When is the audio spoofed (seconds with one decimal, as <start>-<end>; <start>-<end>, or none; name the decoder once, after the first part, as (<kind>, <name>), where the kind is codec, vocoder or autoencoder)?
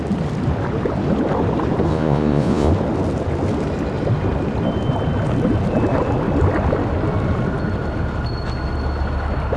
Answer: 1.9-2.7 (vocoder, Vocos)